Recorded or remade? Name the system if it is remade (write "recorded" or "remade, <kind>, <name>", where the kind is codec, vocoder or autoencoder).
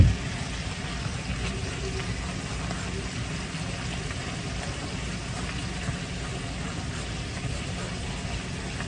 recorded